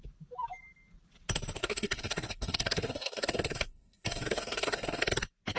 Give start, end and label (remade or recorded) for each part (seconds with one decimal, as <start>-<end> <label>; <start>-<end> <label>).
0.0-1.6 recorded; 1.6-5.0 remade; 5.0-5.6 recorded